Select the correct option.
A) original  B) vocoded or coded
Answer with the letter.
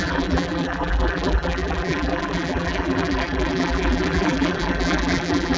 B